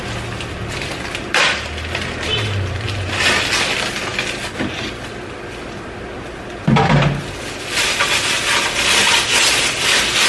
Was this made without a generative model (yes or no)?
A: yes